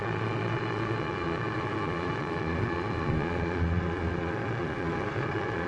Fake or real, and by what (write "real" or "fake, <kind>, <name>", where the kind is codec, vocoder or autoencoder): fake, vocoder, Vocos